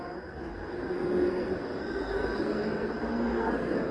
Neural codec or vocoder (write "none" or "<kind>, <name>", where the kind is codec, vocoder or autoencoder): codec, SNAC